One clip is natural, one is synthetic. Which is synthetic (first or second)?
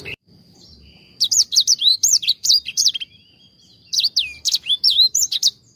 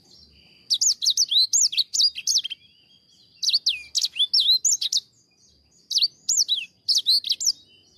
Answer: first